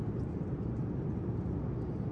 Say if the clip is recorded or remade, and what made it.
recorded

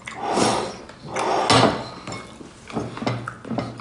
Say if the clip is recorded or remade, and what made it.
recorded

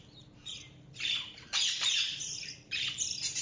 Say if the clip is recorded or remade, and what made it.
remade, vocoder, BigVGAN v2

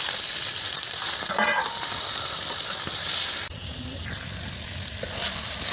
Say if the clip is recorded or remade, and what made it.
recorded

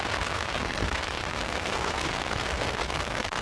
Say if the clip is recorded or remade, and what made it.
remade, codec, SNAC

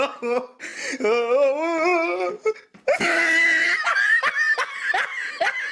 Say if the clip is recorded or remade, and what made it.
recorded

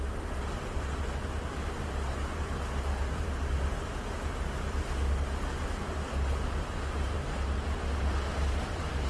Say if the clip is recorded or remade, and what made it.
recorded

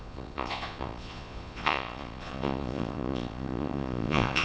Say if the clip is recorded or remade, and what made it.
remade, vocoder, Vocos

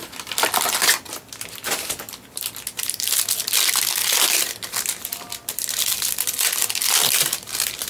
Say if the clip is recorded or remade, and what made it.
recorded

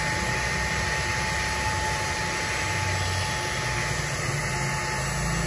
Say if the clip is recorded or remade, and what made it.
recorded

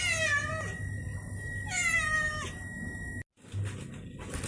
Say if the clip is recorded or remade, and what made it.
recorded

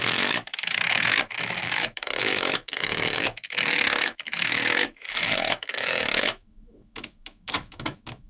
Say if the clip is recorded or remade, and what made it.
remade, autoencoder, DAC-VAE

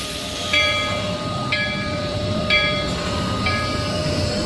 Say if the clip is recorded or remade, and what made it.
remade, vocoder, BigVGAN v2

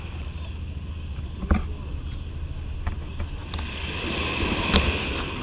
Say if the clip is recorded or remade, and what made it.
recorded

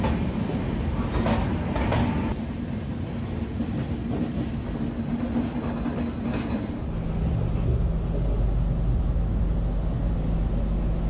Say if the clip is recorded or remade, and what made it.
recorded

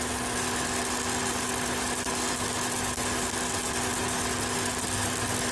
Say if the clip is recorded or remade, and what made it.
recorded